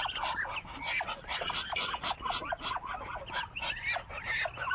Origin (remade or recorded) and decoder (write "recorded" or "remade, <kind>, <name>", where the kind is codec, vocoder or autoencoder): recorded